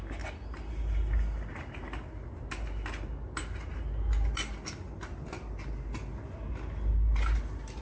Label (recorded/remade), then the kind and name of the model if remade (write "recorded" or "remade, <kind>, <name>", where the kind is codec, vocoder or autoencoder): recorded